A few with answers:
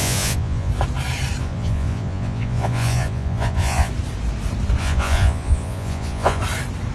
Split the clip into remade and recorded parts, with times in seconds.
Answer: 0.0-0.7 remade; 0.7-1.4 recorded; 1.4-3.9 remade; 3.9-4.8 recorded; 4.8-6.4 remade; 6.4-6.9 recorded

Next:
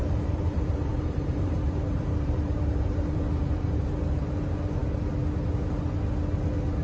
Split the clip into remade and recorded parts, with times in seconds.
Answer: 0.0-4.1 remade; 4.1-6.8 recorded